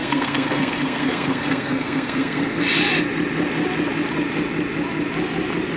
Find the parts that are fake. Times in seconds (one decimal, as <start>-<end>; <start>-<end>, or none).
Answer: 0.0-2.6